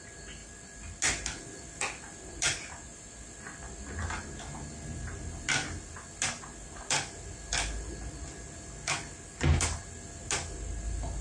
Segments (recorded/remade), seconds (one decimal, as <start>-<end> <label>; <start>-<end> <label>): 0.0-11.2 recorded